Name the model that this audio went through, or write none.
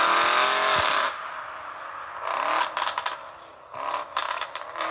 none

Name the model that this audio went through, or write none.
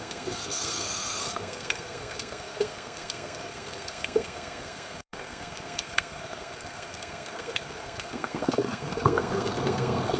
codec, SNAC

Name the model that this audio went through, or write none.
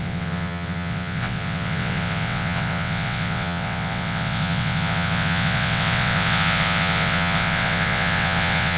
vocoder, WaveNeXt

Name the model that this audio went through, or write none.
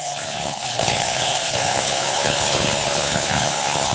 codec, HILCodec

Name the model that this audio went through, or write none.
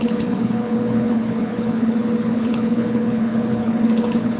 codec, HILCodec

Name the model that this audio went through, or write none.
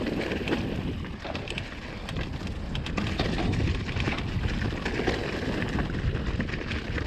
none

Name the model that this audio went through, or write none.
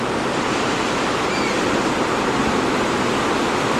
none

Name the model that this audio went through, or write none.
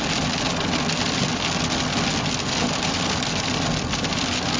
none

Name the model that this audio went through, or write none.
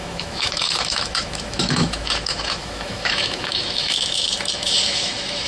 autoencoder, DAC-VAE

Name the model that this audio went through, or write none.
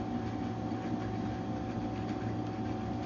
none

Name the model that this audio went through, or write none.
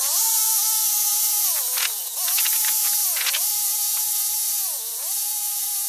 vocoder, Vocos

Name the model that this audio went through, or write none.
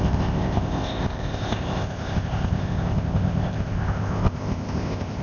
codec, ZipCodec